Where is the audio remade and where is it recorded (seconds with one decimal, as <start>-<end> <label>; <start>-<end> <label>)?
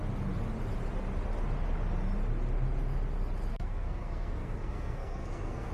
0.0-3.5 recorded; 3.5-5.7 remade